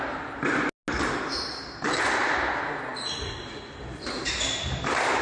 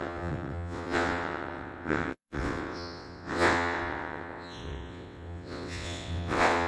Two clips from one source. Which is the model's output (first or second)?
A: second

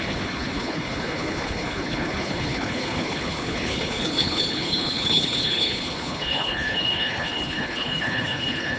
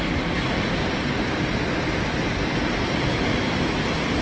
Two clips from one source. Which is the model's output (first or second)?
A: first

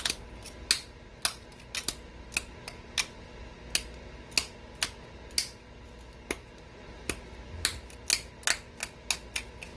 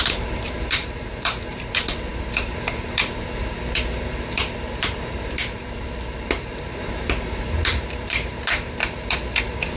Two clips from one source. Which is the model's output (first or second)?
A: second